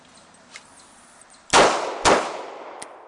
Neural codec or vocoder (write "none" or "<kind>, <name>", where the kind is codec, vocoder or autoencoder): none